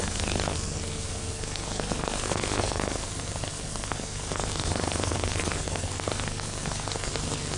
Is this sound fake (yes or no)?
yes